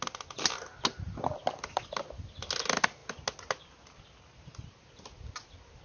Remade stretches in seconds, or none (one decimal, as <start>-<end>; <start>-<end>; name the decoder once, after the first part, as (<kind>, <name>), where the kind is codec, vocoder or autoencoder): none